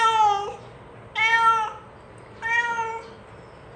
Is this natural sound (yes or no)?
yes